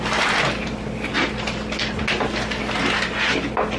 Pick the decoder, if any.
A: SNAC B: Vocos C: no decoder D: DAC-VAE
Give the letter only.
C